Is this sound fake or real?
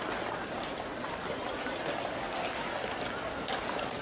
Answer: real